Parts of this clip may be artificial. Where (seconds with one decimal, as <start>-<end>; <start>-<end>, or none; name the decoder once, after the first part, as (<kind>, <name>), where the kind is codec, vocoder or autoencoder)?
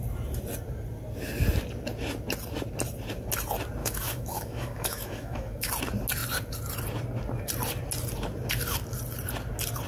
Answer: 3.8-5.7 (autoencoder, DAC-VAE)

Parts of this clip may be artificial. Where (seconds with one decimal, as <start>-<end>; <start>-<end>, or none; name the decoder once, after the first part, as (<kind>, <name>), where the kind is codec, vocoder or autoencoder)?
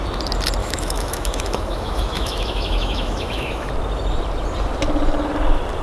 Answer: 0.6-3.7 (autoencoder, DAC-VAE)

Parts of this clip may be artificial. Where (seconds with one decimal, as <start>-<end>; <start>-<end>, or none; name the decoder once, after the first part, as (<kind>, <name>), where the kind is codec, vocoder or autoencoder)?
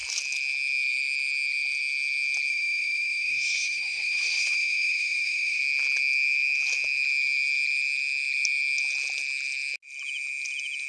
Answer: 2.5-5.6 (autoencoder, DAC-VAE)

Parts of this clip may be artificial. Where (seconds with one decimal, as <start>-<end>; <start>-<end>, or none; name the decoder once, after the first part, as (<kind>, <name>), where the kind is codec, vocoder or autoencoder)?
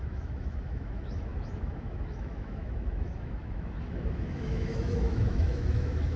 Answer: 0.0-6.2 (autoencoder, DAC-VAE)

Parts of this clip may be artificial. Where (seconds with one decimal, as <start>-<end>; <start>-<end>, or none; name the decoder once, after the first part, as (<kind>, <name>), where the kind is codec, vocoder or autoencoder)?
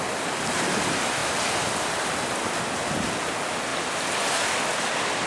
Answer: none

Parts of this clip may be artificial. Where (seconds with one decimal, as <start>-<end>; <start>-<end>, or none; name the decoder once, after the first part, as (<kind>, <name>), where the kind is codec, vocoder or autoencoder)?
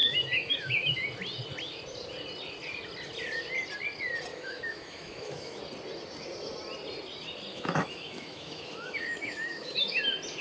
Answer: 0.0-1.0 (autoencoder, DAC-VAE); 4.3-5.6; 7.5-10.0